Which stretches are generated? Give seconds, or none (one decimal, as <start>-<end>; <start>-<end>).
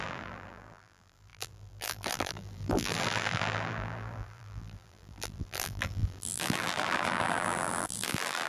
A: 0.0-8.5